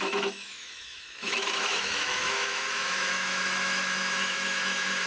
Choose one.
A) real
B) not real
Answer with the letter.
B